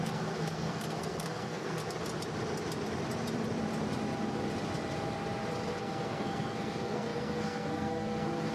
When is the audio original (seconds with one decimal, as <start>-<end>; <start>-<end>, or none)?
1.8-5.8